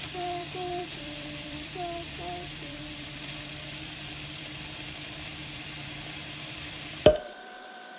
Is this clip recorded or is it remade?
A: remade